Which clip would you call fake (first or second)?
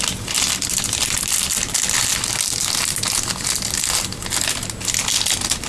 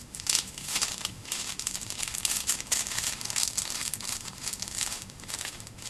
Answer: second